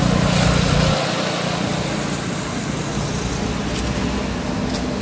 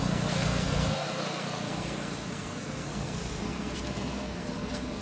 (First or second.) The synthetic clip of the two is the second